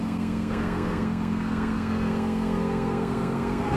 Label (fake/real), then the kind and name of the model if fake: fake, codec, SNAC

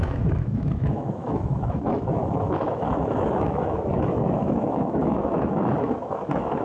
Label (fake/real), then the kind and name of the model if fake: fake, autoencoder, DAC-VAE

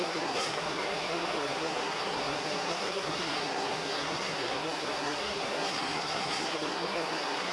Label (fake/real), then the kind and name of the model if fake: fake, codec, SNAC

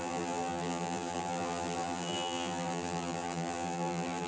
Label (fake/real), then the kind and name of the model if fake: fake, vocoder, BigVGAN v2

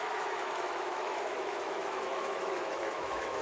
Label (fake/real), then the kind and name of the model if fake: fake, autoencoder, DAC-VAE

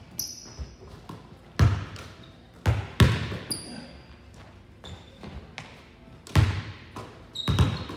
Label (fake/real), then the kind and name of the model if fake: real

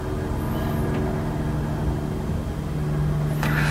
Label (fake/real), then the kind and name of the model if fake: real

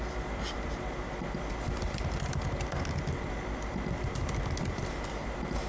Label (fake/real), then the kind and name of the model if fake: real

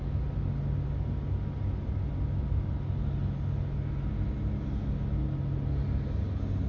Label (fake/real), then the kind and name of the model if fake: real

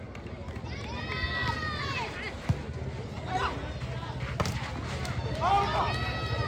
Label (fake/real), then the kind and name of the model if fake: real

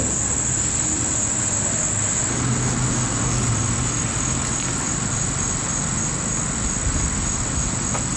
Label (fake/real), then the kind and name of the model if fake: real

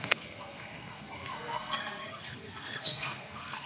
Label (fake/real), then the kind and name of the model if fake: fake, codec, SNAC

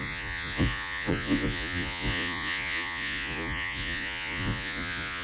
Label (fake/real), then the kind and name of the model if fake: fake, vocoder, Vocos